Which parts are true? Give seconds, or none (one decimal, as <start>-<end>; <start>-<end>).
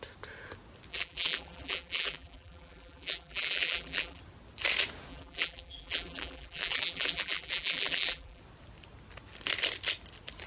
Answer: 0.0-0.9; 4.2-5.1; 8.4-10.5